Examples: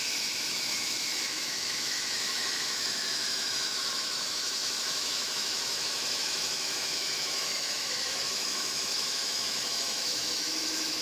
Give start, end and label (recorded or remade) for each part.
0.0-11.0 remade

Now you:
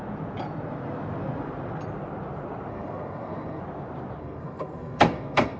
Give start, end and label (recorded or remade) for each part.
0.0-2.7 recorded; 2.7-3.6 remade; 3.6-4.2 recorded; 4.2-5.6 remade

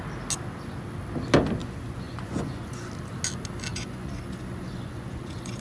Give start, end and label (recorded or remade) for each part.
0.0-1.6 recorded; 1.6-2.9 remade; 2.9-3.7 recorded; 3.7-5.6 remade

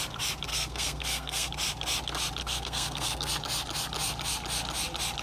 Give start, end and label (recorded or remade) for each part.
0.0-0.5 recorded; 0.5-1.5 remade; 1.5-2.4 recorded; 2.4-3.3 remade; 3.3-5.2 recorded

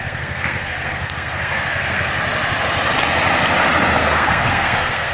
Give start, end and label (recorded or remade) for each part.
0.0-2.1 remade; 2.1-4.0 recorded; 4.0-5.1 remade

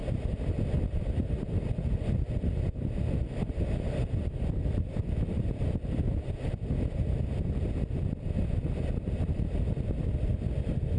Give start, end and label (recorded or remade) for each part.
0.0-11.0 remade

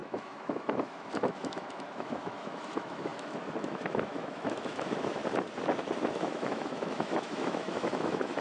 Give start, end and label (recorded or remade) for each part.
0.0-5.2 remade; 5.2-6.0 recorded; 6.0-8.4 remade

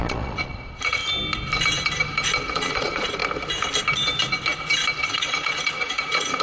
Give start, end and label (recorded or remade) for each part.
0.0-1.0 remade; 1.0-2.5 recorded; 2.5-3.2 remade; 3.2-5.0 recorded; 5.0-6.4 remade